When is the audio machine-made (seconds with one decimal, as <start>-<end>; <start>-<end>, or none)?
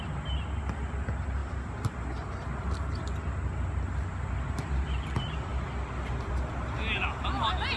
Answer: none